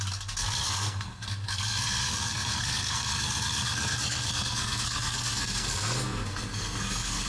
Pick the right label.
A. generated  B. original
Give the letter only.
A